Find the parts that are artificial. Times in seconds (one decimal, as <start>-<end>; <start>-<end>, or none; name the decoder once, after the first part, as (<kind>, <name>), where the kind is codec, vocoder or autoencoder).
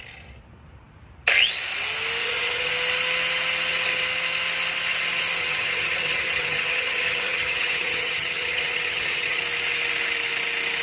2.2-2.7 (vocoder, HiFi-GAN); 5.4-9.4